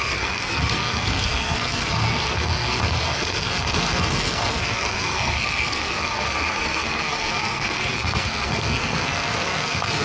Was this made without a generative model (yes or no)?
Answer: no